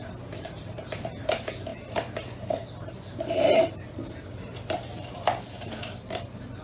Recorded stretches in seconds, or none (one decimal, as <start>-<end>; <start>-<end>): 0.0-6.6